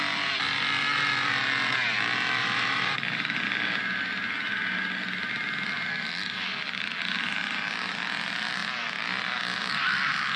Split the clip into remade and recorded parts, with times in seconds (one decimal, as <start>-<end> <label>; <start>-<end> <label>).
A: 0.0-2.4 recorded; 2.4-3.4 remade; 3.4-10.4 recorded